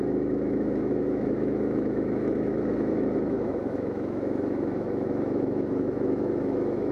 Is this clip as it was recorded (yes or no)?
no